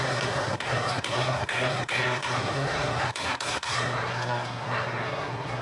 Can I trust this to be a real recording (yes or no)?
no